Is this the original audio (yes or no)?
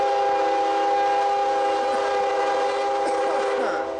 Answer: yes